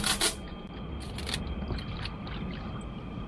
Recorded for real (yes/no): yes